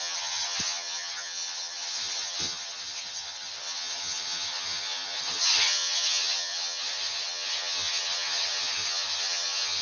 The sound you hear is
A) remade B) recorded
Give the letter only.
A